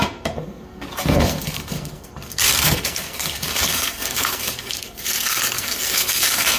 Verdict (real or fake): fake